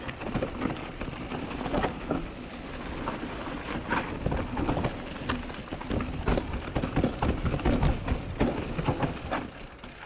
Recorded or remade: recorded